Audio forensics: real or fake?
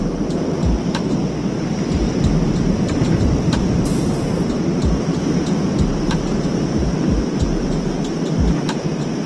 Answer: fake